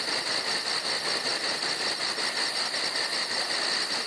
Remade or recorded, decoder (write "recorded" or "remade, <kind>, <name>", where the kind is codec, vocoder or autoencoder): recorded